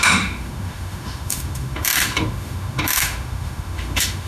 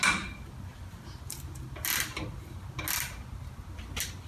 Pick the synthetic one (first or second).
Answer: first